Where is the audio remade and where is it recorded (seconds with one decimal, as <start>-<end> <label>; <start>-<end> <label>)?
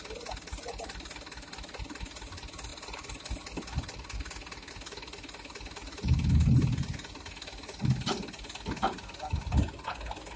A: 0.0-10.4 recorded